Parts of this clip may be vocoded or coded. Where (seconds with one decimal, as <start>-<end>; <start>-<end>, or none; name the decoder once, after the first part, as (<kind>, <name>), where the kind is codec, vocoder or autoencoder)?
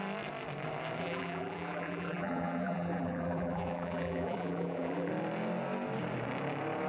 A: 1.0-5.1 (vocoder, BigVGAN v2)